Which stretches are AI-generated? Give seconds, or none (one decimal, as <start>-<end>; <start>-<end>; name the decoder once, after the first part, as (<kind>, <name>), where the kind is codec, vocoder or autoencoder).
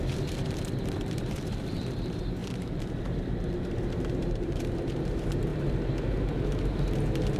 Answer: 0.0-7.4 (vocoder, BigVGAN v2)